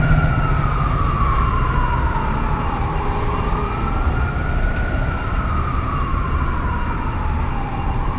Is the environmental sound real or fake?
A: real